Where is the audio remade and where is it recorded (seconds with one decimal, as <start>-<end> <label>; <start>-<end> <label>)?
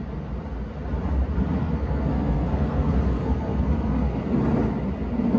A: 0.0-1.6 recorded; 1.6-4.2 remade; 4.2-5.4 recorded